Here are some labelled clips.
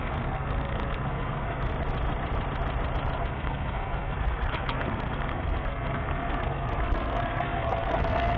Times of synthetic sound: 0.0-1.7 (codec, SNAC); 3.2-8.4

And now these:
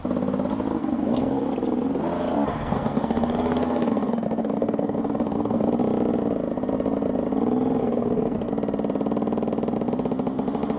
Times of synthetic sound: 0.8-1.4 (codec, SNAC); 2.5-5.7; 7.8-8.5

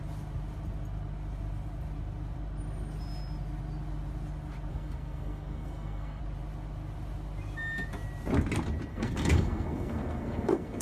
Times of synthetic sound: 4.7-6.2 (codec, SNAC); 8.9-10.8